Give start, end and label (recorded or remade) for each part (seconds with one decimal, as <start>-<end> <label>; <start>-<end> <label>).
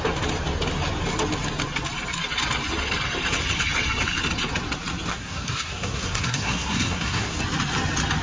0.0-5.1 recorded; 5.1-7.4 remade; 7.4-8.2 recorded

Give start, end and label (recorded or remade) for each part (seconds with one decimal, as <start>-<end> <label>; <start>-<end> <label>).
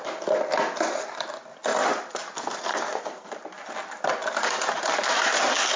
0.0-2.7 recorded; 2.7-3.3 remade; 3.3-5.8 recorded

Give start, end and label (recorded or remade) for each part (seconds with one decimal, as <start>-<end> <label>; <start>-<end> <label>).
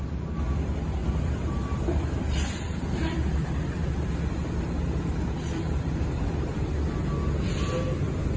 0.0-1.0 recorded; 1.0-6.0 remade; 6.0-8.4 recorded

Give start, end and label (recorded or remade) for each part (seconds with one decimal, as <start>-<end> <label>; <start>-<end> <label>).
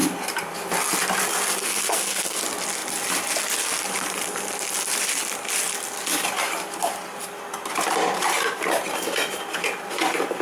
0.0-1.6 recorded; 1.6-2.4 remade; 2.4-10.4 recorded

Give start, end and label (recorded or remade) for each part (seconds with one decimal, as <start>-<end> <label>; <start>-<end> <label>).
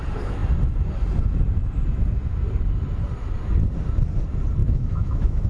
0.0-4.6 recorded; 4.6-5.5 remade